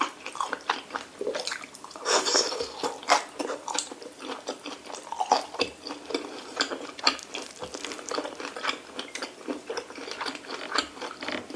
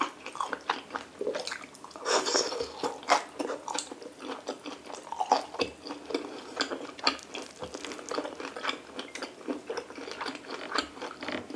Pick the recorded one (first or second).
second